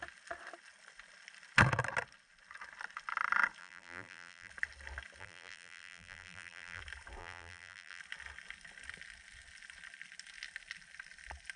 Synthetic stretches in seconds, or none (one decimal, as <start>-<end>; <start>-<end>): 3.6-4.5; 5.2-6.8; 7.2-8.0